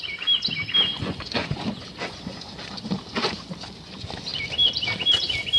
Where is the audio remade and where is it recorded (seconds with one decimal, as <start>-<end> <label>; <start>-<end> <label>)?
0.0-1.0 recorded; 1.0-2.6 remade; 2.6-5.6 recorded

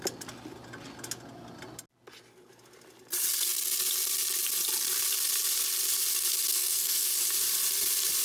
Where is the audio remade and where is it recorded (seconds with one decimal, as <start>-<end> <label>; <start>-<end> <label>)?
0.0-6.5 recorded; 6.5-7.1 remade; 7.1-8.2 recorded